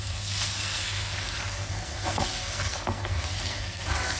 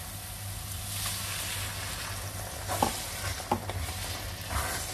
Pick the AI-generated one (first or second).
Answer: first